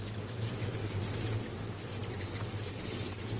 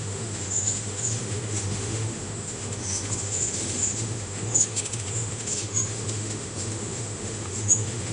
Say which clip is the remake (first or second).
second